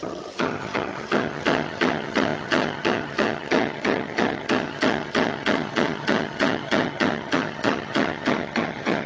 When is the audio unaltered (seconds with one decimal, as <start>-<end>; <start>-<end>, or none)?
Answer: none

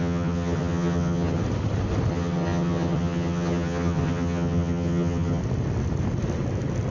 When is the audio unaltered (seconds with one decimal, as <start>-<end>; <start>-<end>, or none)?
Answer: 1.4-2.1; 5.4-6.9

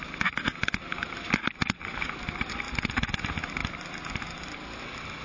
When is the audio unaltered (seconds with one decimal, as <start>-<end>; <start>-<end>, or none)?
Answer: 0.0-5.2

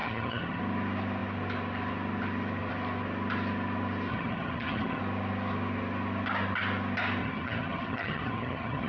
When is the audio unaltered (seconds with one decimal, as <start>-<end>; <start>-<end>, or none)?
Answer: 0.6-4.1; 5.0-7.2

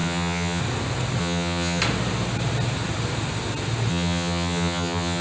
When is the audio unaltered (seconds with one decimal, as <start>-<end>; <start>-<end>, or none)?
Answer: 0.6-1.2; 1.8-3.9